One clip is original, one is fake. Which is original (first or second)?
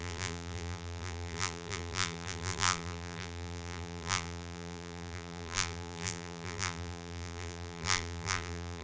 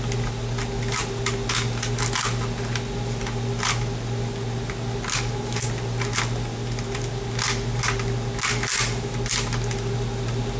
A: second